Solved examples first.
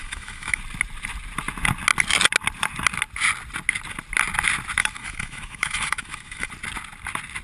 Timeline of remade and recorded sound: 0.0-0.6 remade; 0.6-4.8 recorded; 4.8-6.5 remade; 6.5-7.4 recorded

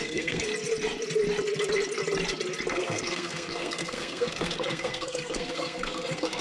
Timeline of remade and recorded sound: 0.0-0.5 remade; 0.5-2.7 recorded; 2.7-6.4 remade

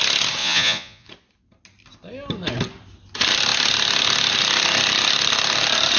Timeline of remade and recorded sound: 0.0-0.4 recorded; 0.4-1.1 remade; 1.1-6.0 recorded

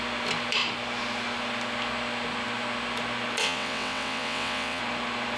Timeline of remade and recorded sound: 0.0-3.4 recorded; 3.4-4.8 remade; 4.8-5.4 recorded

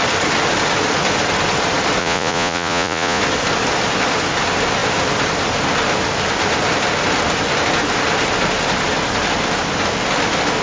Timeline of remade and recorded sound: 0.0-2.0 recorded; 2.0-3.2 remade; 3.2-10.6 recorded

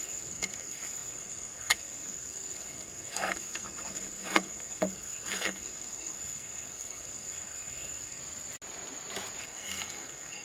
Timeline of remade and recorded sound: 0.0-8.2 remade; 8.2-9.4 recorded; 9.4-10.4 remade

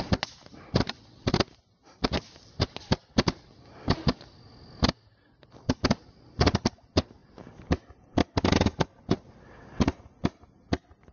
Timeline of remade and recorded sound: 0.0-11.1 recorded

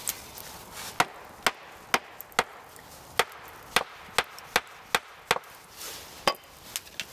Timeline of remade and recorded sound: 0.0-7.1 recorded